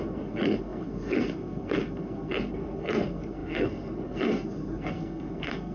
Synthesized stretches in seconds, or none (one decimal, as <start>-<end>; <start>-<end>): 0.0-5.7